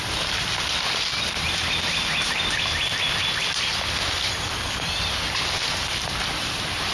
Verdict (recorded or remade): recorded